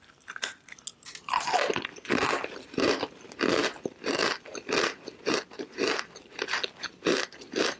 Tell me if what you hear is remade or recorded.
recorded